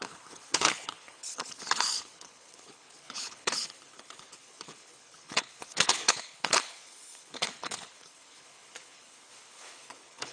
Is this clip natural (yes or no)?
no